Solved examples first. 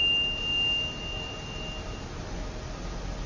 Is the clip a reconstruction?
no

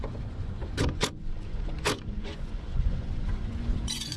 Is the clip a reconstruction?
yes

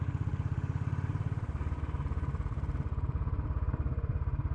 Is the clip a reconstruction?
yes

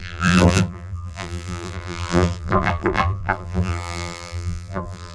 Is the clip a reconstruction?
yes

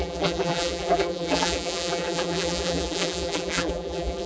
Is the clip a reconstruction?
yes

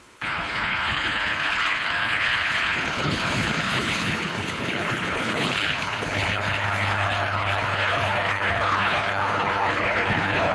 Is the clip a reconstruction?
yes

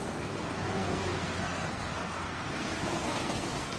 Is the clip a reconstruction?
yes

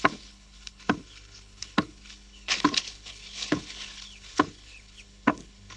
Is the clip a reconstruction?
yes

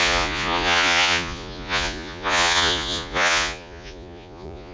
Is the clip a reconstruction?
yes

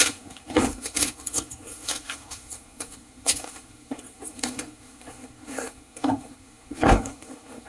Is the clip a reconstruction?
yes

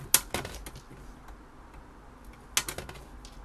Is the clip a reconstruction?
no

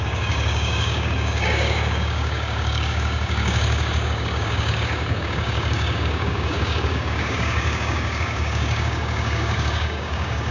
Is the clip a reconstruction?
yes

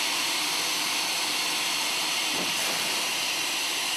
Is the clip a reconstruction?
yes